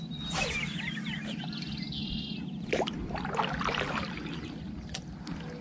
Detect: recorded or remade recorded